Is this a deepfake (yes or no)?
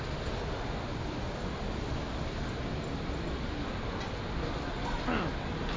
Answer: no